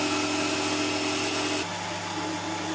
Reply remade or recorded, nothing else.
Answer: recorded